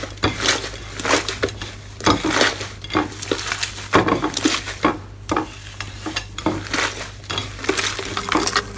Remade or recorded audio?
recorded